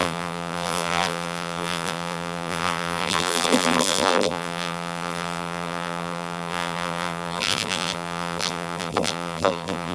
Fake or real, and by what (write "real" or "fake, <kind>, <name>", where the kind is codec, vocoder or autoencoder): fake, vocoder, BigVGAN v2